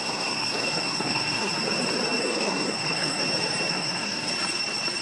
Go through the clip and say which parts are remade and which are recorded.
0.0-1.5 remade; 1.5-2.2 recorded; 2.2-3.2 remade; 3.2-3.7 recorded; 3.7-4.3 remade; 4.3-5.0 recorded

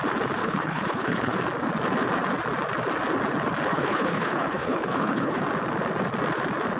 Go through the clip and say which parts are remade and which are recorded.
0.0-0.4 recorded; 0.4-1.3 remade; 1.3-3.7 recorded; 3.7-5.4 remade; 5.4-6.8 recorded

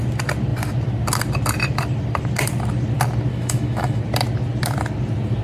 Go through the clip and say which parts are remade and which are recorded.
0.0-3.3 recorded; 3.3-4.0 remade; 4.0-5.4 recorded